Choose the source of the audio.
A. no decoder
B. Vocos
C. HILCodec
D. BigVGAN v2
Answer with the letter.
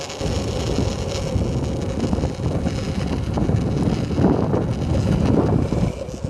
A